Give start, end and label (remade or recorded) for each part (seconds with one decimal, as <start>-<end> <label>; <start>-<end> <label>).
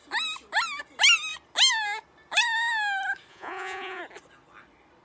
0.0-3.3 recorded; 3.3-4.0 remade; 4.0-5.0 recorded